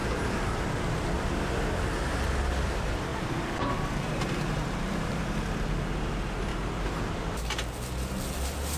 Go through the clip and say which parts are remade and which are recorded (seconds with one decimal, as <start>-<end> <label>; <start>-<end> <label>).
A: 0.0-3.1 recorded; 3.1-5.2 remade; 5.2-6.5 recorded; 6.5-7.0 remade; 7.0-8.8 recorded